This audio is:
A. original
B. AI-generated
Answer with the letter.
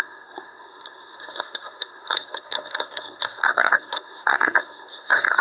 B